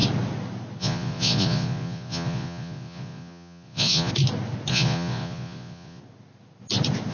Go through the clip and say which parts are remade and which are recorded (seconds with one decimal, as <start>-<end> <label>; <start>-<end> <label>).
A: 0.0-0.8 recorded; 0.8-4.1 remade; 4.1-4.7 recorded; 4.7-6.0 remade; 6.0-7.1 recorded